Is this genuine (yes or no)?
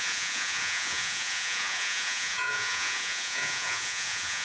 no